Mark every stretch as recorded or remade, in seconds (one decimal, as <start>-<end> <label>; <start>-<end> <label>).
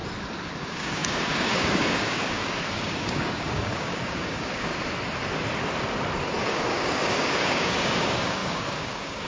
0.0-0.6 recorded; 0.6-4.7 remade; 4.7-6.4 recorded; 6.4-9.3 remade